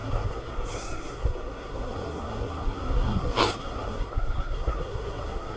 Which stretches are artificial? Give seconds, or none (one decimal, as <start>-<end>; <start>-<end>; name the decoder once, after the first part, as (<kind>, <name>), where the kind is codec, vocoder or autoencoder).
0.0-5.6 (codec, SNAC)